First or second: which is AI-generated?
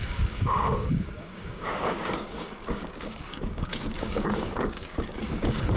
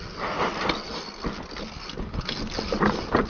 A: first